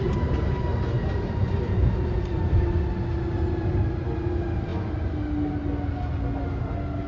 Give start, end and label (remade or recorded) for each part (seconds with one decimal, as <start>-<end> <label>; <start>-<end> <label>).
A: 0.0-7.1 recorded